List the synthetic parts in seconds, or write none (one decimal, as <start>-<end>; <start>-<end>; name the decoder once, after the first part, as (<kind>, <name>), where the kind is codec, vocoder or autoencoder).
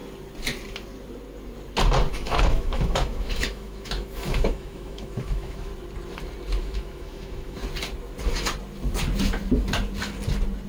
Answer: 2.1-5.7 (autoencoder, DAC-VAE); 6.6-7.6